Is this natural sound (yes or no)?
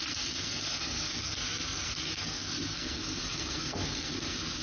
no